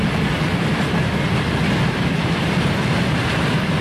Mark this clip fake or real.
real